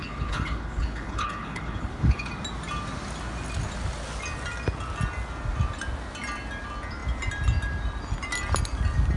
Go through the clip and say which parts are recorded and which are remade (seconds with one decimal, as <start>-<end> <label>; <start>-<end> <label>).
0.0-2.3 remade; 2.3-9.2 recorded